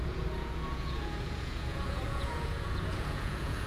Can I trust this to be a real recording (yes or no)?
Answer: no